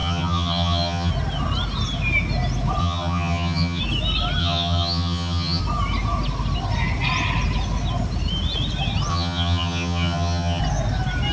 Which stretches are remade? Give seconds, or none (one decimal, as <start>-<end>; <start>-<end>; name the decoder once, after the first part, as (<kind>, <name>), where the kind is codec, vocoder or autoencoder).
0.0-1.1 (vocoder, HiFi-GAN); 2.8-3.8; 4.4-5.6; 9.1-10.6